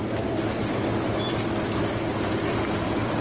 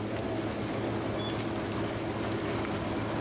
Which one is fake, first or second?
first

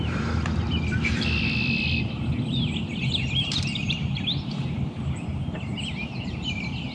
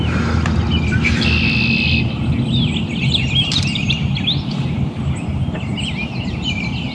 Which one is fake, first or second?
first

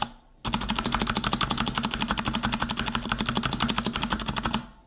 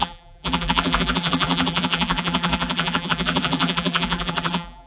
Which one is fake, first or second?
second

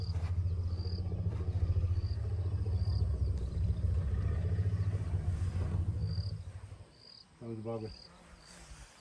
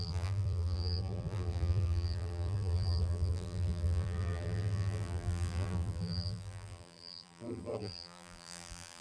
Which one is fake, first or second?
second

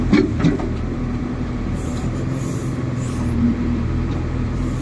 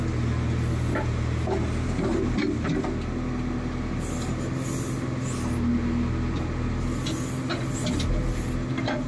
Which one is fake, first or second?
first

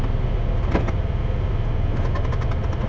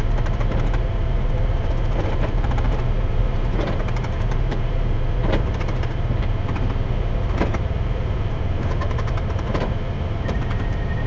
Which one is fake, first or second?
second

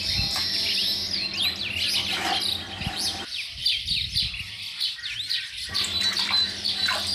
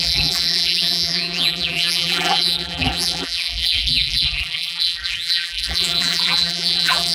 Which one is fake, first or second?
second